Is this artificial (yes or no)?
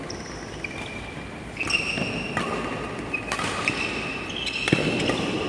no